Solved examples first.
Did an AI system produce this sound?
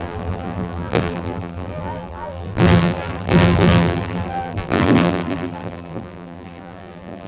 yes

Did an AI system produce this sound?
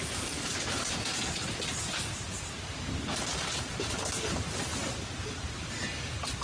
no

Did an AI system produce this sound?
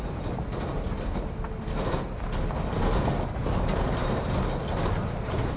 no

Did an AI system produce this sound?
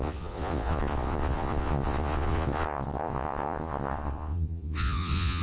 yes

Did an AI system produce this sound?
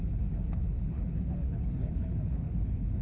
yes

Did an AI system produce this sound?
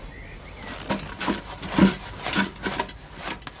no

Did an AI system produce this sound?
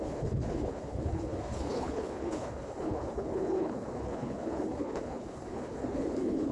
yes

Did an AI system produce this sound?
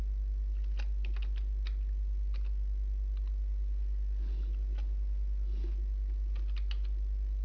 no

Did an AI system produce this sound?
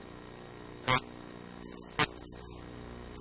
no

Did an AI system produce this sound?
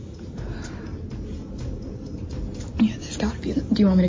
no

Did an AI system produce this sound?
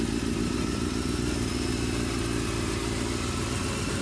no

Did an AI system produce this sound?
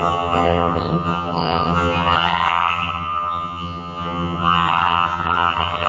yes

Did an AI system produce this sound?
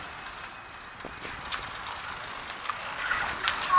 no